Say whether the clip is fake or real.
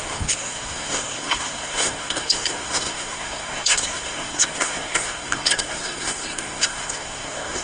fake